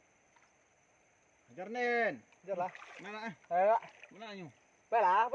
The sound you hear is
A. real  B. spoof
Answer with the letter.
A